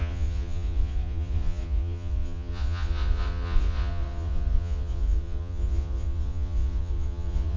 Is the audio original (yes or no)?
no